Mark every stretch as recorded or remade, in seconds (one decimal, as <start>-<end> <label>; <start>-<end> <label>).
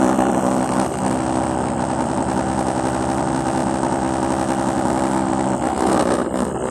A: 0.0-6.7 recorded